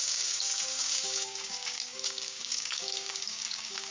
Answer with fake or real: fake